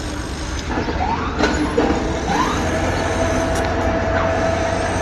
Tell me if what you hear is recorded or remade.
recorded